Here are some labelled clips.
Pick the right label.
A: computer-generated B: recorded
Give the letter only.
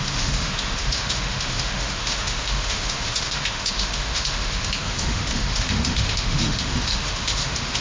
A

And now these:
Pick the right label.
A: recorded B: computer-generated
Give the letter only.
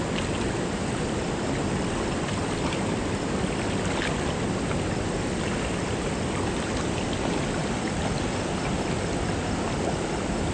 A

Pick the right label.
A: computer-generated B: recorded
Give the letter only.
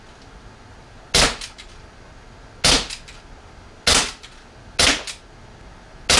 B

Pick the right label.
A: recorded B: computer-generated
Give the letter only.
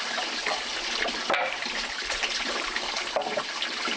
A